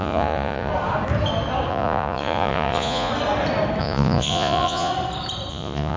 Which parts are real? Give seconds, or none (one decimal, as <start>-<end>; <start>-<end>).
0.7-1.7; 3.1-3.8; 4.9-5.5